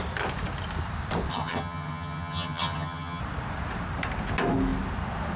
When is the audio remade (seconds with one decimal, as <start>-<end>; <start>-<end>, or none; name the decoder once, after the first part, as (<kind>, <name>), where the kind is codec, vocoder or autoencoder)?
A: 1.3-3.2 (vocoder, HiFi-GAN)